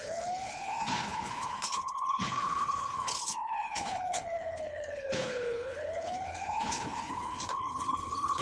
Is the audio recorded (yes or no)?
no